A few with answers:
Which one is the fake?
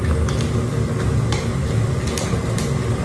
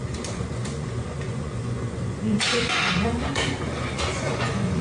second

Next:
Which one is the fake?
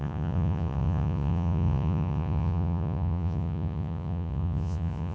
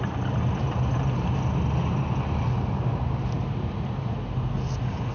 first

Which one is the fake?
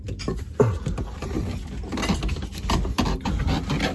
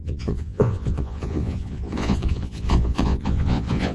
second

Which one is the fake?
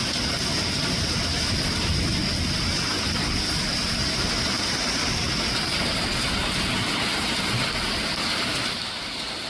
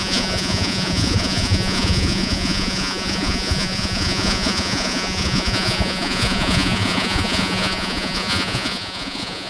second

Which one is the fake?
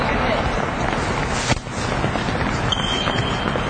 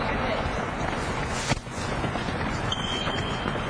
second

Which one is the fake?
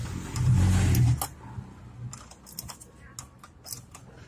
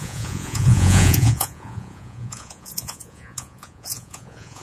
second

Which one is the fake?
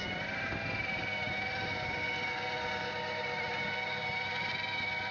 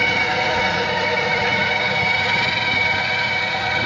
second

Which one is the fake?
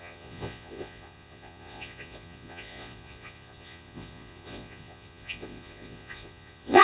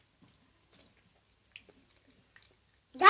first